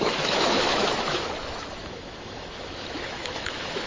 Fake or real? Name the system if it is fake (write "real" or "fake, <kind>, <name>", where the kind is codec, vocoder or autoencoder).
fake, autoencoder, DAC-VAE